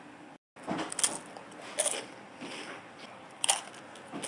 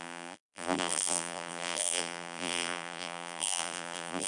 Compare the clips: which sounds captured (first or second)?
first